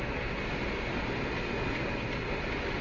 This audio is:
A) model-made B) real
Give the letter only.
B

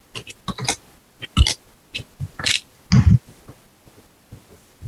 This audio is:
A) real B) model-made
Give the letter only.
A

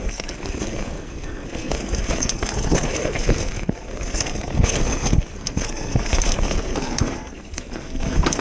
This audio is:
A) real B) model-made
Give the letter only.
B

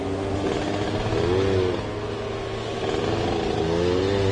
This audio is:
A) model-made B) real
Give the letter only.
B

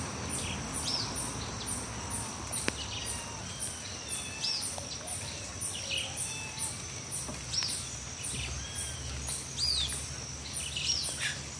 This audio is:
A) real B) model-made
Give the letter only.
A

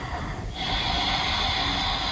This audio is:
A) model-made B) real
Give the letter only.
B